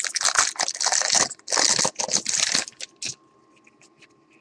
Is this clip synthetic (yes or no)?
no